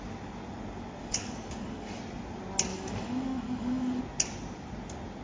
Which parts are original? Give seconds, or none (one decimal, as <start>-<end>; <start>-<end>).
0.0-1.0; 2.0-2.7; 4.0-5.2